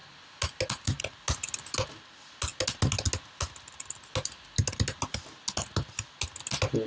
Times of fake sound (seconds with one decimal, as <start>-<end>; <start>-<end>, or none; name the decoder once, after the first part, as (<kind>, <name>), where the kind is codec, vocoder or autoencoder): none